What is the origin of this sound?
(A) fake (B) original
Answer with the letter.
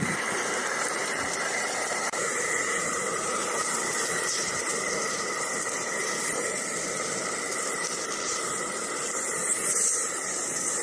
A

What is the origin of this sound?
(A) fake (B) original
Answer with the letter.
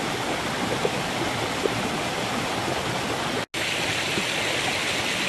B